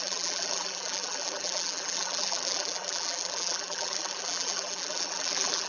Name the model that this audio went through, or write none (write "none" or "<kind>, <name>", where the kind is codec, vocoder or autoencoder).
vocoder, BigVGAN v2